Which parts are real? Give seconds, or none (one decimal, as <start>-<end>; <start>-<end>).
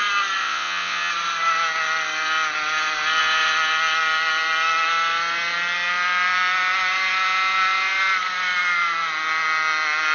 0.0-0.4; 1.1-10.1